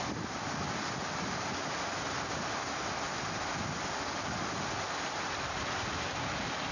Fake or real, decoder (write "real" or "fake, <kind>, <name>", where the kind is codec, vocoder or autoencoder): real